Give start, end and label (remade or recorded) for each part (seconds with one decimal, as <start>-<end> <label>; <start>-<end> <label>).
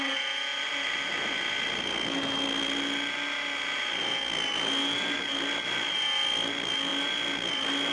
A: 0.0-7.9 recorded